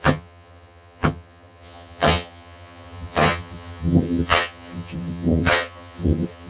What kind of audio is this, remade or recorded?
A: remade